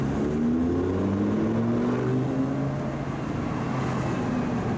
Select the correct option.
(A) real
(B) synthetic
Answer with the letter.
A